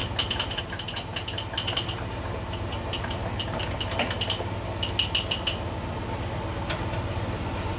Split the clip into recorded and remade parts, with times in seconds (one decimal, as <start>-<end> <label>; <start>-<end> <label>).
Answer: 0.0-7.8 recorded